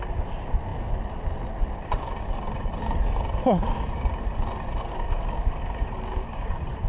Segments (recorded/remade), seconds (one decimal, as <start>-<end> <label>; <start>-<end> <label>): 0.0-4.9 recorded; 4.9-6.5 remade; 6.5-6.9 recorded